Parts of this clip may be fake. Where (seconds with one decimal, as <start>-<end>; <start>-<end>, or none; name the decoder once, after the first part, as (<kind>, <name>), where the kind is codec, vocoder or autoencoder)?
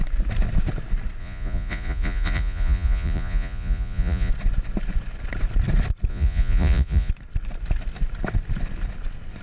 1.2-4.3 (vocoder, Vocos); 6.1-7.1